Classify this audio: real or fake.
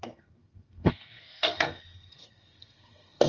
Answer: fake